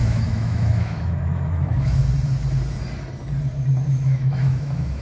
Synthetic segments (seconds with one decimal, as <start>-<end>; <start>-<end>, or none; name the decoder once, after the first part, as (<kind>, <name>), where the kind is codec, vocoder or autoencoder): 0.0-2.0 (autoencoder, DAC-VAE); 3.9-5.0